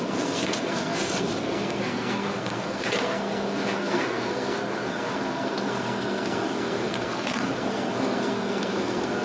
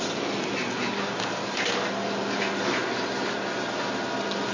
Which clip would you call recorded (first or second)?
second